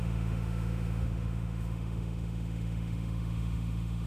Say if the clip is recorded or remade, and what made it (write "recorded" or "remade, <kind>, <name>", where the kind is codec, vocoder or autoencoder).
remade, autoencoder, DAC-VAE